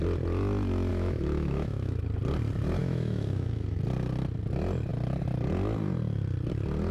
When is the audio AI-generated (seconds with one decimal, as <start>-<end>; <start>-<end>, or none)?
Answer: 0.9-2.0; 2.8-3.8